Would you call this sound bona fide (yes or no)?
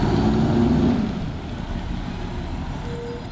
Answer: yes